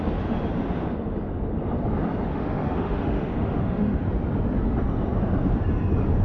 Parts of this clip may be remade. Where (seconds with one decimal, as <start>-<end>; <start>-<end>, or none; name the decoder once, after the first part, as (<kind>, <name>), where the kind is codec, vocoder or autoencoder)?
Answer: 2.3-4.0 (autoencoder, DAC-VAE)